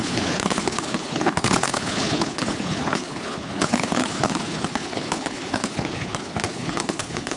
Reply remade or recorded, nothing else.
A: remade